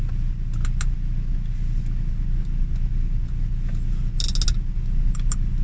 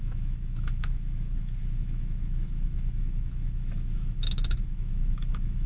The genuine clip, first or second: first